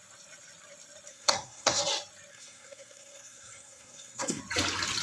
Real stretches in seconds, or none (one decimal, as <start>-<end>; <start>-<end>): 0.0-1.1; 1.8-2.3; 4.4-5.0